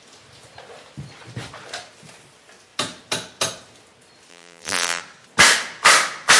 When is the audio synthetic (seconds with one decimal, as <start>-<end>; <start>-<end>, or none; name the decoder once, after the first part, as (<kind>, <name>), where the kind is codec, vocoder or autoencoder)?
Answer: 4.3-5.0 (vocoder, BigVGAN v2)